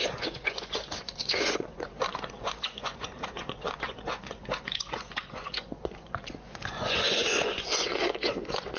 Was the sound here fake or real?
fake